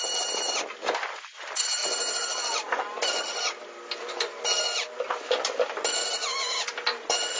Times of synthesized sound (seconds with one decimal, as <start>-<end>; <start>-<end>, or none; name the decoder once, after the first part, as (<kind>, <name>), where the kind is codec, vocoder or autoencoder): none